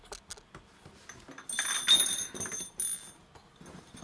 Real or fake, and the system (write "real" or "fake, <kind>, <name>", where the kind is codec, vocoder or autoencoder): real